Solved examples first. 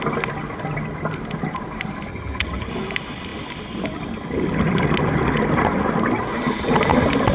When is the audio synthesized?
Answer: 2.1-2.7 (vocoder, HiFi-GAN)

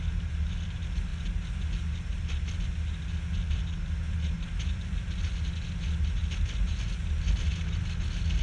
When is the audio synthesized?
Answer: none

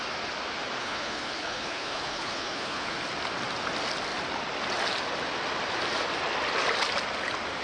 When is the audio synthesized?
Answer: 0.8-3.0 (codec, HILCodec)

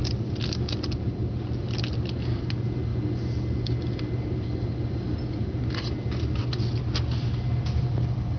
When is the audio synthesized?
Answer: none

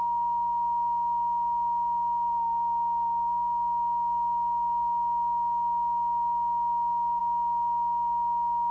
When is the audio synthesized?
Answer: none